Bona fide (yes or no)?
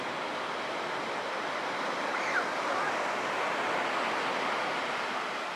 yes